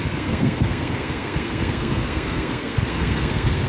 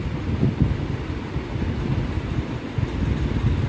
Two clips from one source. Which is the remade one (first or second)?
first